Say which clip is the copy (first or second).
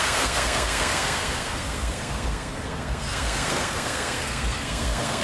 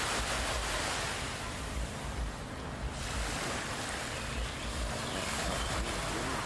first